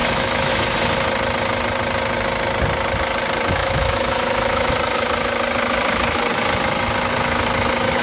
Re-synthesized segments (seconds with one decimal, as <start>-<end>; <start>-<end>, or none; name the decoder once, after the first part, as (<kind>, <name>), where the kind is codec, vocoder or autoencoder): 0.0-0.5 (autoencoder, DAC-VAE); 3.6-4.7